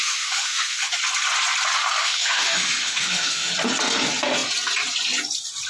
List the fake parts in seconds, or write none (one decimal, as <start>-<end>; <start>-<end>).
0.0-1.0; 2.0-3.5